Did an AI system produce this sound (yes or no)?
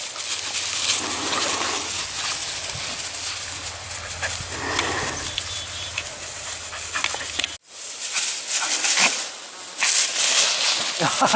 no